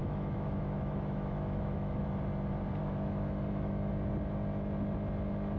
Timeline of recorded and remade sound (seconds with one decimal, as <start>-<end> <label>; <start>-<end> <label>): 0.0-2.0 remade; 2.0-2.8 recorded; 2.8-3.9 remade; 3.9-5.6 recorded